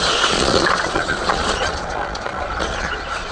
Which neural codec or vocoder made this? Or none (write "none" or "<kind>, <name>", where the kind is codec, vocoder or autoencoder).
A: vocoder, Vocos